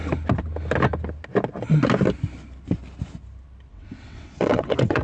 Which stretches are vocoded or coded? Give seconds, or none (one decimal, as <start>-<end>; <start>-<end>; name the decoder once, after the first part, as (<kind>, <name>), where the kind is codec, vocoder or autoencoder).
3.7-5.0 (vocoder, WaveNeXt)